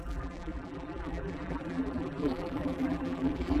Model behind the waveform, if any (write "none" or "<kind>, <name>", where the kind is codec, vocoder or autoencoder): vocoder, BigVGAN v2